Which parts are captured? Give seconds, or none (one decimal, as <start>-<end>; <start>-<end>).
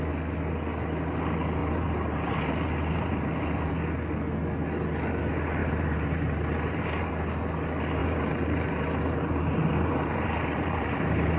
0.0-1.6; 3.7-5.6; 7.1-8.0